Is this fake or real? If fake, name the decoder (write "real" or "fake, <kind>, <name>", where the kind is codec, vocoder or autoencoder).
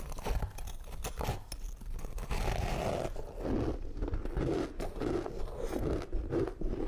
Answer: real